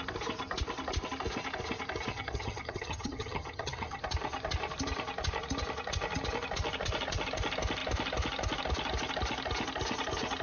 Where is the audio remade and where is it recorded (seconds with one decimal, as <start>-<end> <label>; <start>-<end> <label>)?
0.0-2.1 recorded; 2.1-4.0 remade; 4.0-10.4 recorded